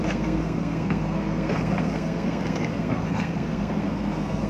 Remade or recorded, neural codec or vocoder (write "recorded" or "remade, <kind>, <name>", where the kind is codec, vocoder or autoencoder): remade, codec, SNAC